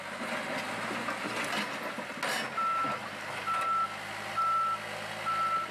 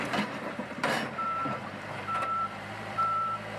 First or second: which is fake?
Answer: second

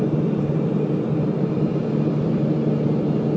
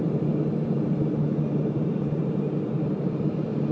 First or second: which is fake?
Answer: second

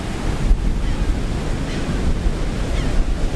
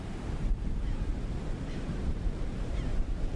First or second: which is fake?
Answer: second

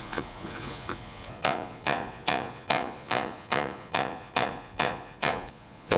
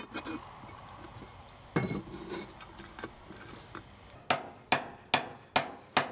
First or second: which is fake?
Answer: first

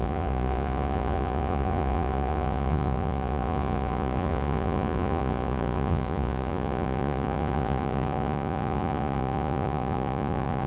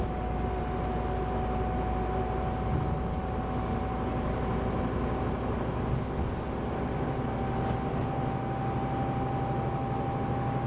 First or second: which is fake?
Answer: first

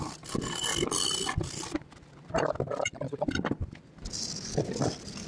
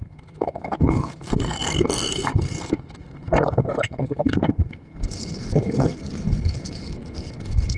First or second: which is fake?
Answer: second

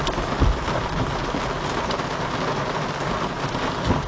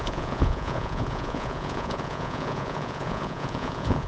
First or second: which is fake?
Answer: second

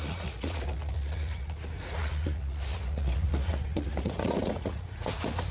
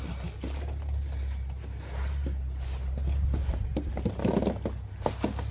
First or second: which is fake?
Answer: first